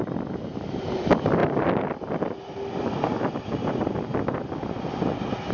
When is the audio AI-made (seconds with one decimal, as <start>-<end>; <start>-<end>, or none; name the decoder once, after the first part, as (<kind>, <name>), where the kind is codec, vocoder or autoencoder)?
none